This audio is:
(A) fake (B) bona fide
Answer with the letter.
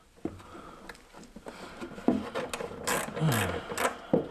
B